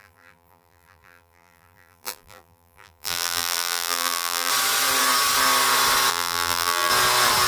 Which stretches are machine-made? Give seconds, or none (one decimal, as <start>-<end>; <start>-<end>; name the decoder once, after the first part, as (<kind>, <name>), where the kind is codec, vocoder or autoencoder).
0.0-4.5 (vocoder, BigVGAN v2); 6.1-6.9